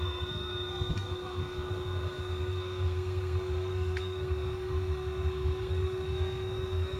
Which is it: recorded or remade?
remade